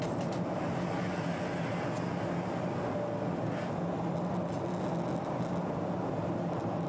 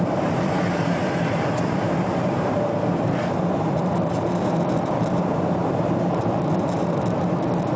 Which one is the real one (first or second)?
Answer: first